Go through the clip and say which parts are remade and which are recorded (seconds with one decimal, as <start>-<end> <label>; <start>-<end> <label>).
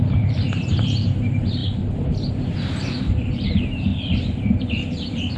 0.0-1.6 remade; 1.6-2.3 recorded; 2.3-3.9 remade; 3.9-4.7 recorded; 4.7-5.4 remade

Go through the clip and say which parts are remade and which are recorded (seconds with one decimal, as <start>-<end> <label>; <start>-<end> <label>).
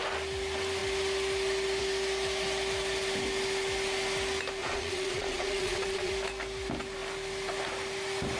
0.0-4.6 recorded; 4.6-6.1 remade; 6.1-8.4 recorded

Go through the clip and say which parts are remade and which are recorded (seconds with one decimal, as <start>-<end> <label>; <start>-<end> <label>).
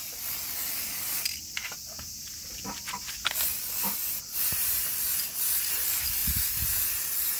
0.0-7.4 recorded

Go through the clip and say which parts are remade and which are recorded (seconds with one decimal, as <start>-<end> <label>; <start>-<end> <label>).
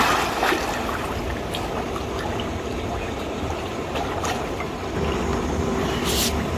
0.0-2.9 recorded; 2.9-4.8 remade; 4.8-6.6 recorded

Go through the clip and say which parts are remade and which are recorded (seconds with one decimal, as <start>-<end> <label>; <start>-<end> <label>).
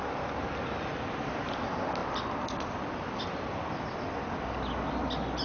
0.0-0.9 recorded; 0.9-1.6 remade; 1.6-2.0 recorded; 2.0-3.2 remade; 3.2-5.4 recorded